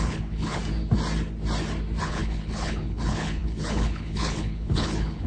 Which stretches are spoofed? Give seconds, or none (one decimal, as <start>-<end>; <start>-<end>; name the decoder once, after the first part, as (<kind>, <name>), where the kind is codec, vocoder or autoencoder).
0.0-0.6 (codec, HILCodec); 2.0-5.3